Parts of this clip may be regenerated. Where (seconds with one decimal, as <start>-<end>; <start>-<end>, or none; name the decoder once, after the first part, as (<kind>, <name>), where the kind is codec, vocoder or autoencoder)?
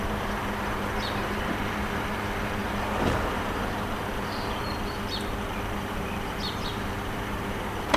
0.0-8.0 (vocoder, BigVGAN v2)